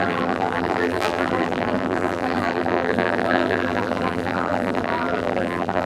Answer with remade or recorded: remade